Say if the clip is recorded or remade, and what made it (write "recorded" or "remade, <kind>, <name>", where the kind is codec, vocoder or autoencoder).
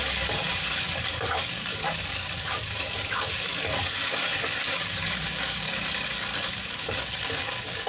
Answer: remade, codec, DAC